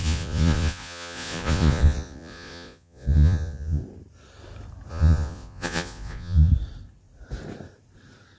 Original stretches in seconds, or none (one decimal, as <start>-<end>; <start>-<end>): 3.8-4.9; 6.5-8.4